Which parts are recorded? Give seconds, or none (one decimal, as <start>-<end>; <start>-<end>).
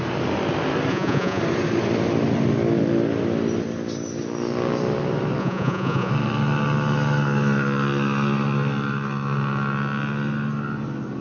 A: 0.0-0.9; 1.4-5.4; 6.1-11.2